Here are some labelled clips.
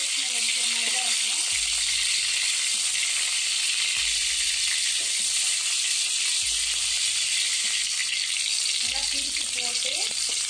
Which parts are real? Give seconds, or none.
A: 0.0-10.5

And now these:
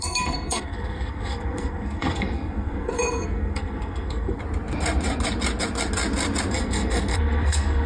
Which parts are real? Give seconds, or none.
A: 4.4-6.5

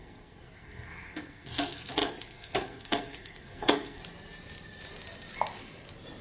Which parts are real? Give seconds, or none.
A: 4.0-6.2

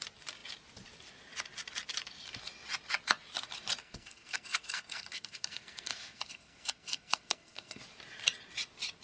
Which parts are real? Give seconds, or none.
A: 0.0-3.8; 7.8-9.0